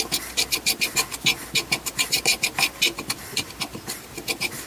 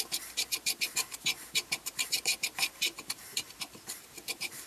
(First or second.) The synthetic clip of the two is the second